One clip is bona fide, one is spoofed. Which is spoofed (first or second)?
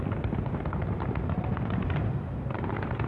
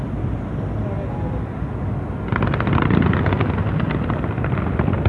first